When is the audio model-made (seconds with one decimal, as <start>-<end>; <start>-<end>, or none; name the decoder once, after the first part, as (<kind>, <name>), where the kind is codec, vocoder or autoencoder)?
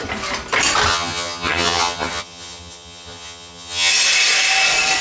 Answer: 0.9-3.9 (vocoder, HiFi-GAN)